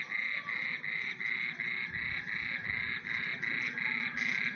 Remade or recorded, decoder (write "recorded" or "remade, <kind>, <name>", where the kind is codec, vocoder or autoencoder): recorded